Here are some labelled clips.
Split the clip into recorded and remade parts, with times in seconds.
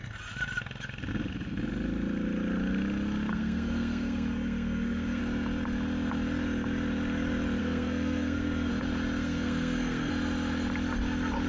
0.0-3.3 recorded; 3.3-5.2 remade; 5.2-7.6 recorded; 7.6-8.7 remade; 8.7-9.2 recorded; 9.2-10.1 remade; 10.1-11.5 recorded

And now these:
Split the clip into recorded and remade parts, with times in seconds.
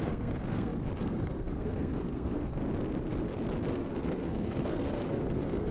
0.0-2.5 remade; 2.5-3.7 recorded; 3.7-5.7 remade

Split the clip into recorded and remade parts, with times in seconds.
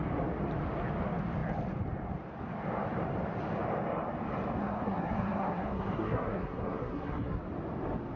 0.0-4.6 recorded; 4.6-7.4 remade; 7.4-8.2 recorded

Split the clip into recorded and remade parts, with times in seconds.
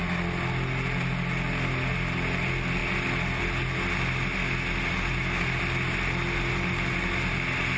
0.0-7.8 recorded